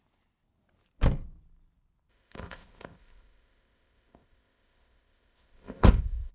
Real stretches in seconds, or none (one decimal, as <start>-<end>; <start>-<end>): 0.0-2.1